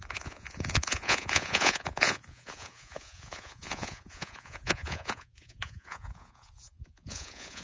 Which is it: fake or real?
fake